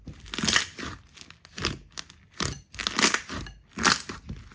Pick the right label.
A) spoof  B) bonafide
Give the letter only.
B